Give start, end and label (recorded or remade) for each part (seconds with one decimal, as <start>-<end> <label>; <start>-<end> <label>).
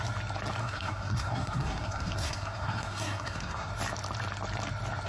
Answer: 0.0-0.6 recorded; 0.6-3.7 remade; 3.7-5.1 recorded